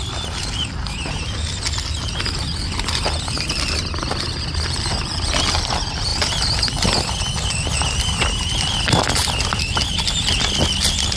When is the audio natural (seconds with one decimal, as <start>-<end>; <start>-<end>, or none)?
0.0-11.2